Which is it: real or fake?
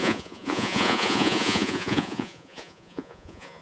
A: fake